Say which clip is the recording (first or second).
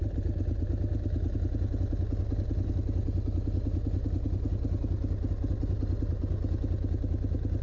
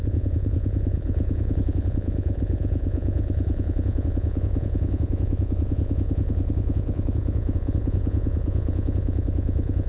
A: first